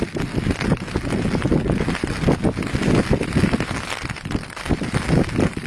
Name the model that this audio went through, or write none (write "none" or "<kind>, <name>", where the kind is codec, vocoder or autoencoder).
none